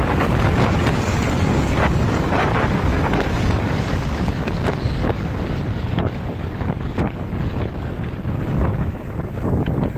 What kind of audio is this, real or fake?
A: fake